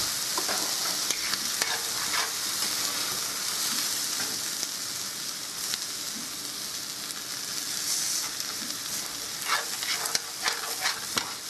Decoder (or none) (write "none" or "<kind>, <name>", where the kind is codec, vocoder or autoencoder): none